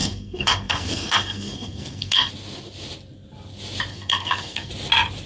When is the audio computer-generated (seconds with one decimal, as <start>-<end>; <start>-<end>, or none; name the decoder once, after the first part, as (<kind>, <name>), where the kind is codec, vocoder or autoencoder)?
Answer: 0.0-2.3 (codec, SNAC); 3.9-4.7